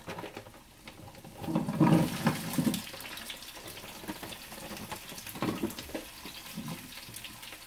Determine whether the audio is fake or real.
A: real